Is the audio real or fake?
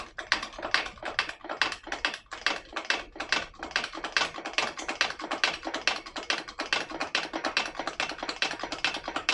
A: real